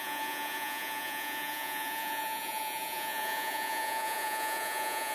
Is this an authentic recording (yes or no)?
no